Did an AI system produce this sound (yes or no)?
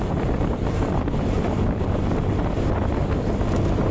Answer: no